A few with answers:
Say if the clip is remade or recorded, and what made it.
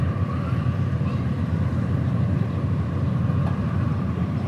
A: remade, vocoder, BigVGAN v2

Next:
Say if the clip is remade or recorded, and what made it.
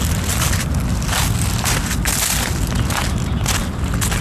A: recorded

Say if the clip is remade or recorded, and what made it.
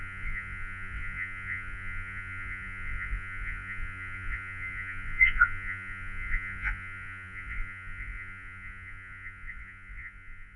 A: remade, vocoder, Vocos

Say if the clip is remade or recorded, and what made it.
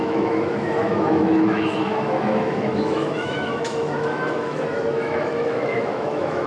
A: remade, autoencoder, DAC-VAE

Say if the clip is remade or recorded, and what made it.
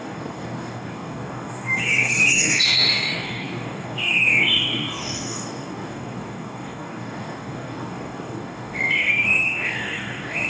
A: remade, codec, DAC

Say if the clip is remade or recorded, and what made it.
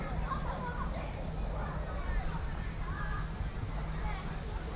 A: recorded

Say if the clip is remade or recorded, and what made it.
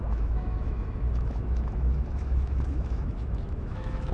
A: remade, autoencoder, DAC-VAE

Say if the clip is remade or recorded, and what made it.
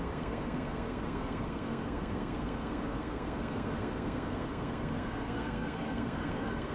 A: remade, codec, SNAC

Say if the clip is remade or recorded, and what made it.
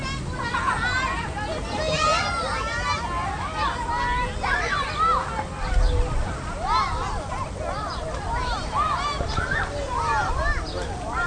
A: recorded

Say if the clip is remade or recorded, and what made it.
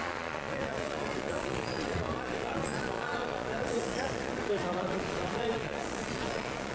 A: remade, vocoder, Vocos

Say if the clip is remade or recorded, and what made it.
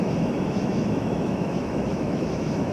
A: remade, autoencoder, DAC-VAE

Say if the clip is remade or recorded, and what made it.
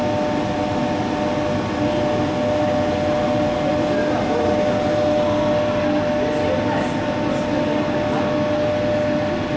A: recorded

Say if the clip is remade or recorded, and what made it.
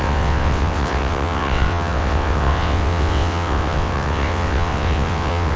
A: remade, vocoder, WaveNeXt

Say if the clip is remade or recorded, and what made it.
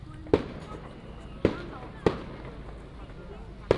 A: recorded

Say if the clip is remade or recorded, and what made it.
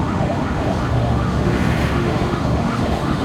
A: remade, autoencoder, DAC-VAE